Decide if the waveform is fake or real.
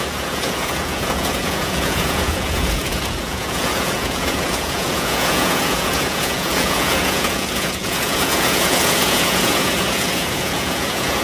fake